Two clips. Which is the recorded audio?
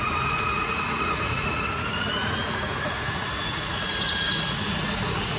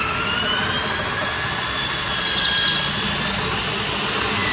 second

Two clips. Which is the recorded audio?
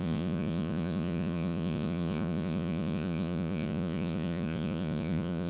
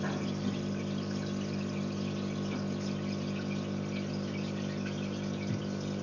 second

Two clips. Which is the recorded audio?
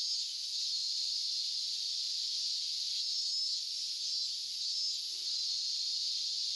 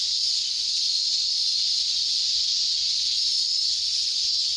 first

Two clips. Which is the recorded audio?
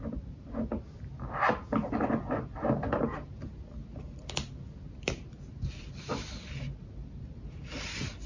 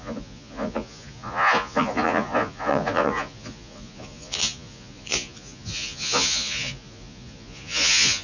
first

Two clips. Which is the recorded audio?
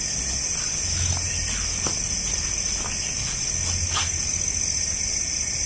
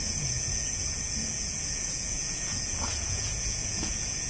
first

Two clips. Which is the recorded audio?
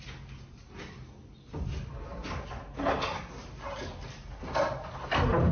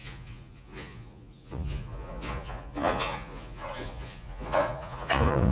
first